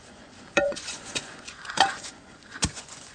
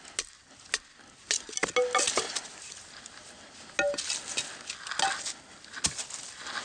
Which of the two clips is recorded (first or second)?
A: second